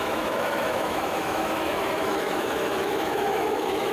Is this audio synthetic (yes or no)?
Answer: yes